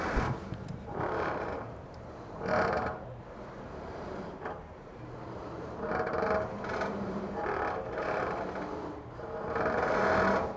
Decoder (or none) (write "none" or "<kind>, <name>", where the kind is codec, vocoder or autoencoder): vocoder, BigVGAN v2